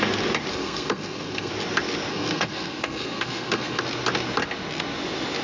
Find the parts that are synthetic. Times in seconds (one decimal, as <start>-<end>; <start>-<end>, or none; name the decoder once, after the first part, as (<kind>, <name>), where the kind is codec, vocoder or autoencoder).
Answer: 0.5-1.5 (codec, SNAC); 2.1-3.8